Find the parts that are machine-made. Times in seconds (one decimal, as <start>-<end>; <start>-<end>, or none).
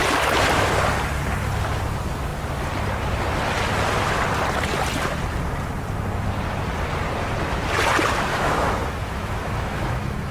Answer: 8.3-10.3